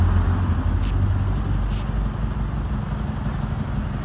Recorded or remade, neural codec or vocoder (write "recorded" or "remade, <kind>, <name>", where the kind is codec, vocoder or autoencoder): recorded